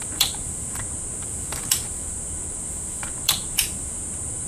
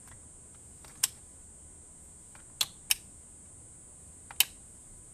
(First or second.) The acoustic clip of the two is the second